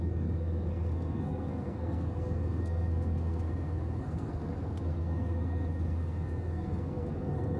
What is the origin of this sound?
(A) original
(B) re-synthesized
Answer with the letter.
B